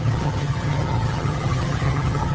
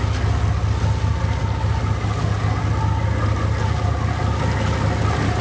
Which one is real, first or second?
second